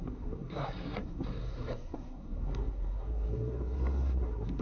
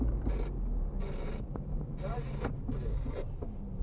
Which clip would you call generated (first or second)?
first